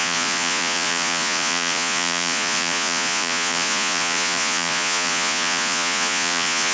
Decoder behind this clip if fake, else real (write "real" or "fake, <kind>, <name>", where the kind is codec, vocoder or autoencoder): fake, vocoder, Vocos